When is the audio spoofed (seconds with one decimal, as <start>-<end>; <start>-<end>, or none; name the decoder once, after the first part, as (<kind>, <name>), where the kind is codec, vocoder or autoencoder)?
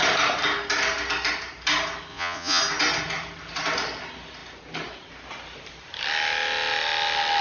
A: 2.1-2.6 (vocoder, Vocos)